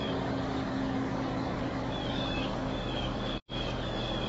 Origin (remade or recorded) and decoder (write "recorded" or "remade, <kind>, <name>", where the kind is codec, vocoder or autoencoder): remade, codec, DAC